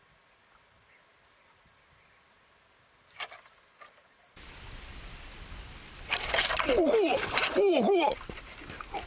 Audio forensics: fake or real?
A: real